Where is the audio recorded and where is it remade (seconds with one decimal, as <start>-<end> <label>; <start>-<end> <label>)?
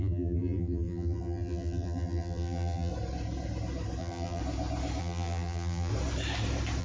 0.0-2.9 remade; 2.9-4.0 recorded; 4.0-4.4 remade; 4.4-5.0 recorded; 5.0-5.9 remade; 5.9-6.8 recorded